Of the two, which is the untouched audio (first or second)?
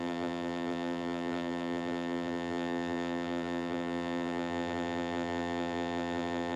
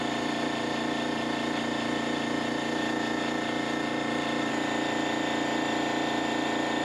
second